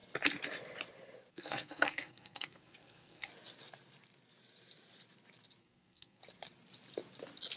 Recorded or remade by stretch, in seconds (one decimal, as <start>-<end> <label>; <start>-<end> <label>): 0.0-1.3 recorded; 1.3-3.3 remade; 3.3-5.6 recorded; 5.6-6.2 remade; 6.2-7.6 recorded